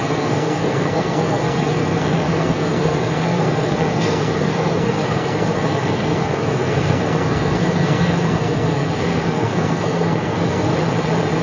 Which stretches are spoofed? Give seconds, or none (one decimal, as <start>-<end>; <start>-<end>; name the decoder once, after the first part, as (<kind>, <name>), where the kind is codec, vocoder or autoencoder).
0.0-10.7 (codec, SNAC)